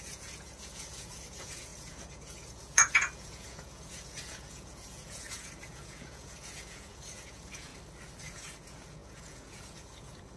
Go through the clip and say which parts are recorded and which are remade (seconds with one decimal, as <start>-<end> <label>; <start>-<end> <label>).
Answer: 0.0-7.7 remade; 7.7-8.2 recorded; 8.2-10.4 remade